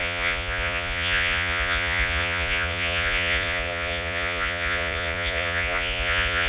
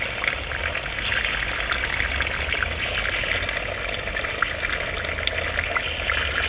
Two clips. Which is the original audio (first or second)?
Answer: second